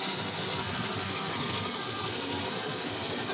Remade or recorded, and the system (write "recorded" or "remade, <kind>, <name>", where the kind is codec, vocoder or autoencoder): remade, codec, SNAC